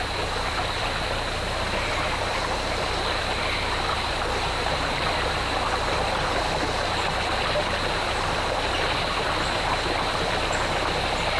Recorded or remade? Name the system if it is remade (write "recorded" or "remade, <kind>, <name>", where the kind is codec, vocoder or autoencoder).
remade, vocoder, BigVGAN v2